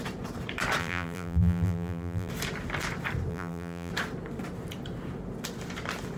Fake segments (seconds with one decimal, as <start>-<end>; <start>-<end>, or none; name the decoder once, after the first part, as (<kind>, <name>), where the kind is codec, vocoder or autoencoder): 0.8-2.3 (vocoder, BigVGAN v2); 3.3-3.9

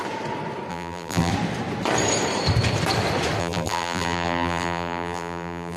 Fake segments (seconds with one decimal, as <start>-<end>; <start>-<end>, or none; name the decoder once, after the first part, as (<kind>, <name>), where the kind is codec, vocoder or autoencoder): 0.7-1.3 (vocoder, BigVGAN v2); 3.4-5.8

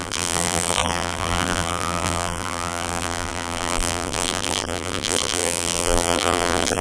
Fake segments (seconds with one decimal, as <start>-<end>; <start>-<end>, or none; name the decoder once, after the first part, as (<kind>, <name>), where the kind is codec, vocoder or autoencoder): 0.0-6.8 (vocoder, BigVGAN v2)